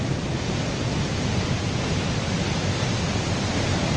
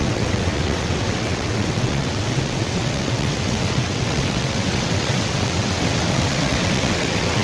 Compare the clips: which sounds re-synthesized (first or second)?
second